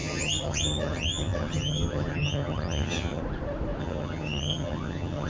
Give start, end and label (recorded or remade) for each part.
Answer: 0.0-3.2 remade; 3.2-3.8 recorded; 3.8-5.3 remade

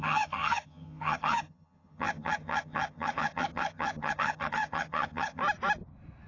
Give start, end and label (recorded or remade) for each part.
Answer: 0.0-5.4 remade; 5.4-6.3 recorded